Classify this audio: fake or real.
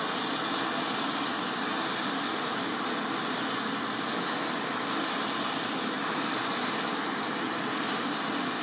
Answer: real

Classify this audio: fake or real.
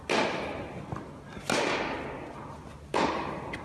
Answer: real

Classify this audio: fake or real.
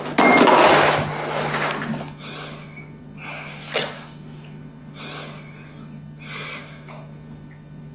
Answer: real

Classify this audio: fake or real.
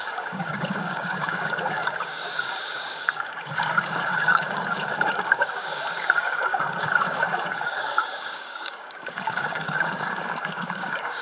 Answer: fake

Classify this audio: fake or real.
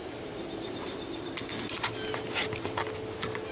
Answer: real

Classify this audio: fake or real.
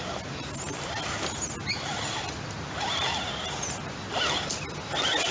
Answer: real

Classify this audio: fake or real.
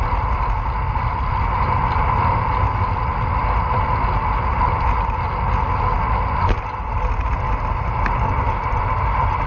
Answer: real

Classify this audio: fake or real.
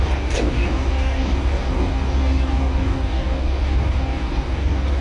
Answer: fake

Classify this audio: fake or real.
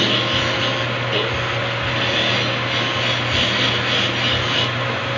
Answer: real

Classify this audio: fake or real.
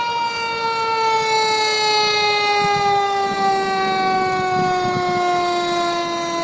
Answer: real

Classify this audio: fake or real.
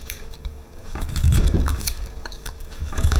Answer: fake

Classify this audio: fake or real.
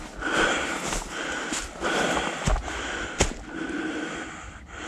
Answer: real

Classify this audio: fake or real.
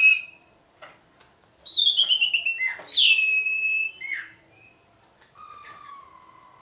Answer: real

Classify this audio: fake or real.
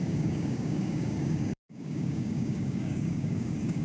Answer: fake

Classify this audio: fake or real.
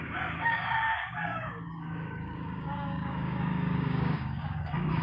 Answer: fake